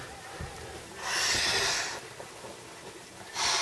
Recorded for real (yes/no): yes